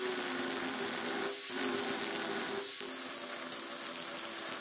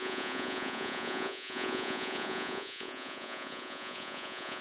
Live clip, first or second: first